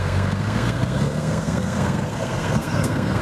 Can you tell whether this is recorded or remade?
remade